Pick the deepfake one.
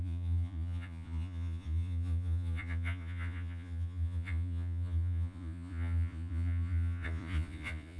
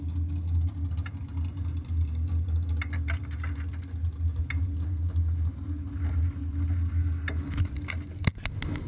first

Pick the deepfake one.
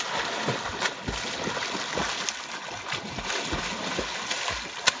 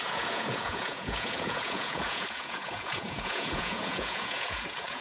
second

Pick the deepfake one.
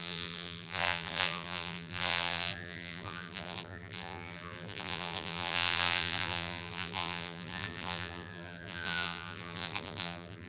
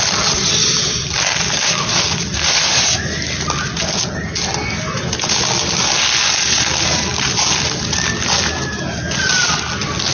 first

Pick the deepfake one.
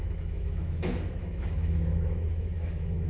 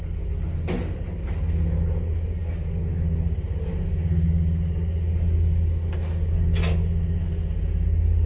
first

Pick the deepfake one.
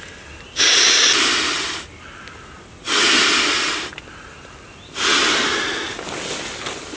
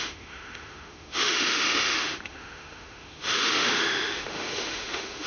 second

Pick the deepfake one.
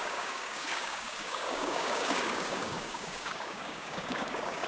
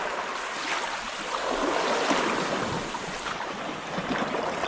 first